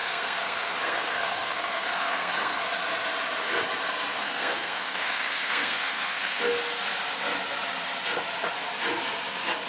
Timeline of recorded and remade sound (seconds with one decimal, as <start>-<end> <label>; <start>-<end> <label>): 0.0-2.6 remade; 2.6-4.1 recorded; 4.1-6.4 remade; 6.4-9.7 recorded